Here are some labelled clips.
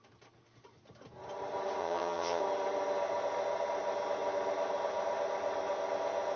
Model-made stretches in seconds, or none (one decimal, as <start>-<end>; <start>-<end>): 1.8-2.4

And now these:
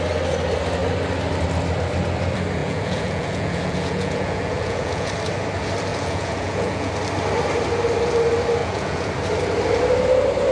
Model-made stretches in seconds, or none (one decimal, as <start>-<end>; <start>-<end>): 2.6-5.1; 5.9-6.9; 8.6-9.1

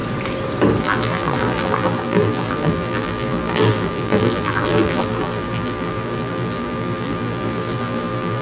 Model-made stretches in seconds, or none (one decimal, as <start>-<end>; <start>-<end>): 0.8-8.4